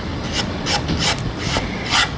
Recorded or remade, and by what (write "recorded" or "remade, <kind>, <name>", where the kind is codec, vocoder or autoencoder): recorded